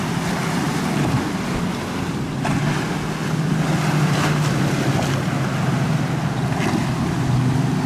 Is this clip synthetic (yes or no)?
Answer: no